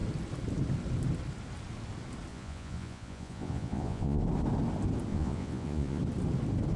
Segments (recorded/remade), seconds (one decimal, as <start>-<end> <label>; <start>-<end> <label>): 0.0-2.3 recorded; 2.3-4.2 remade; 4.2-5.1 recorded; 5.1-6.0 remade; 6.0-6.8 recorded